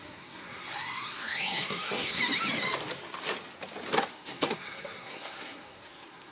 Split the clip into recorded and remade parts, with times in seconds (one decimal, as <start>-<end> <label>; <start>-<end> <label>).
0.0-2.2 remade; 2.2-4.1 recorded; 4.1-6.3 remade